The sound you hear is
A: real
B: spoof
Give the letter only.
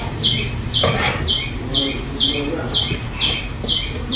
B